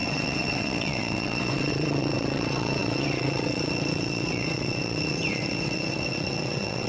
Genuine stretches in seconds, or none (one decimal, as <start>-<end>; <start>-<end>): none